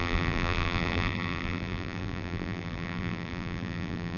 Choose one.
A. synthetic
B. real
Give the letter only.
A